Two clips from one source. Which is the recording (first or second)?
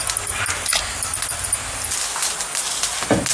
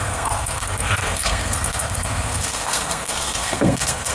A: first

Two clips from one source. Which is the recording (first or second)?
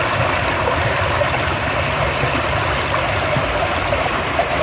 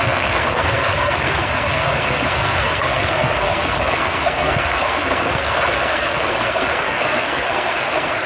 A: first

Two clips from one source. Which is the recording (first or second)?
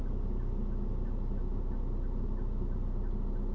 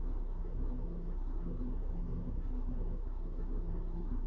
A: first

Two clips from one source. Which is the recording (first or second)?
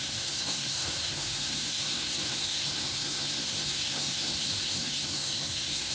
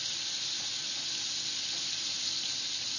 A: second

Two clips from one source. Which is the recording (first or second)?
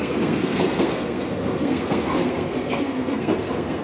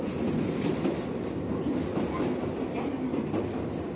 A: second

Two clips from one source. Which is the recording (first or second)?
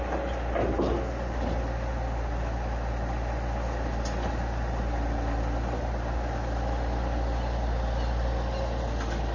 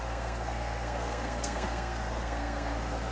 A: first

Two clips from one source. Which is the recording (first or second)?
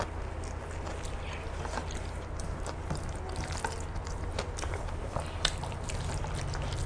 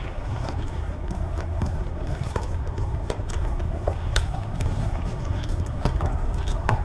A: first